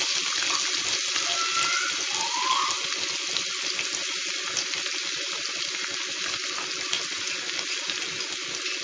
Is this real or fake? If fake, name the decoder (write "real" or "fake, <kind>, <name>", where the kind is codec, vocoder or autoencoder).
real